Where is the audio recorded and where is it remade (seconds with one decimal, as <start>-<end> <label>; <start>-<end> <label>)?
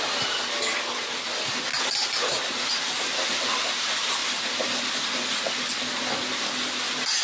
0.0-7.2 recorded